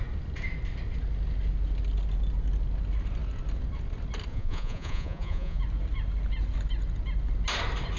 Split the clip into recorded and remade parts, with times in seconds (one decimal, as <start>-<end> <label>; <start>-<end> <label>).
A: 0.0-4.3 recorded; 4.3-5.6 remade; 5.6-8.0 recorded

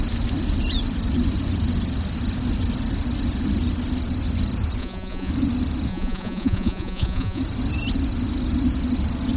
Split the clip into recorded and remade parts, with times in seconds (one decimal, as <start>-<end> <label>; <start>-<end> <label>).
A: 0.0-4.8 recorded; 4.8-5.3 remade; 5.3-5.9 recorded; 5.9-7.4 remade; 7.4-9.4 recorded

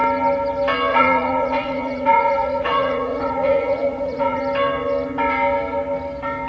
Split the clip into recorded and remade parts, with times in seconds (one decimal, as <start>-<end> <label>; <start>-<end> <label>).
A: 0.0-0.9 recorded; 0.9-4.4 remade; 4.4-6.5 recorded